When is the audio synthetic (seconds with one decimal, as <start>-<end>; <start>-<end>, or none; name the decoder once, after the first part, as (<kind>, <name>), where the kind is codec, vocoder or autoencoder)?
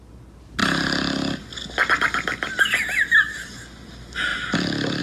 none